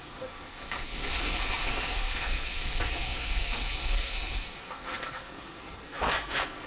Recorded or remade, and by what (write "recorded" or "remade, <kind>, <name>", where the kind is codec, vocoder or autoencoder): remade, codec, SNAC